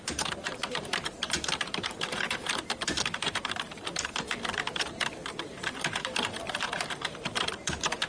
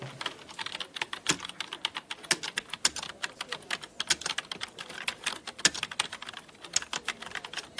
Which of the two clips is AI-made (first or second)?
first